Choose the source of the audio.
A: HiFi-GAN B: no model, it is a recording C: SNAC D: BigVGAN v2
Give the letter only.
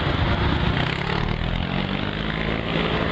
B